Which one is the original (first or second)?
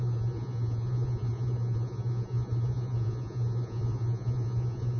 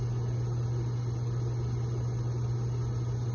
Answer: second